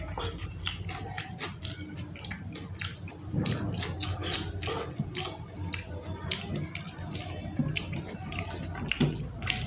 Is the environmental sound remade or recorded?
recorded